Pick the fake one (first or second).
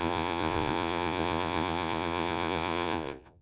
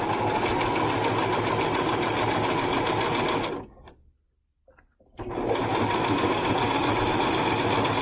first